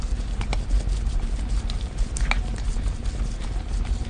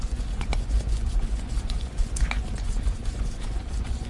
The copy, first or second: second